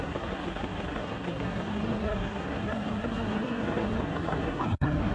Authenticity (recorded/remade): remade